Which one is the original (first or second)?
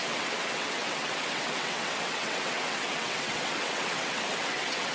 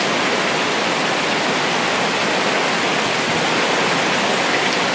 second